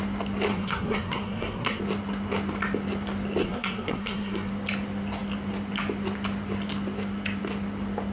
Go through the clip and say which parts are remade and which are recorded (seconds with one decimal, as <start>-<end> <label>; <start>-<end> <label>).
0.0-0.5 recorded; 0.5-1.8 remade; 1.8-3.4 recorded; 3.4-4.5 remade; 4.5-8.1 recorded